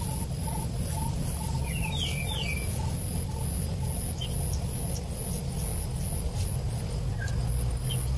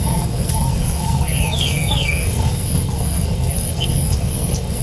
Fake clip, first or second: second